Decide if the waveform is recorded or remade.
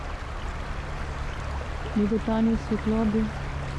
recorded